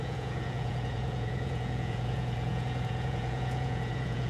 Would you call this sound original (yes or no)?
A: no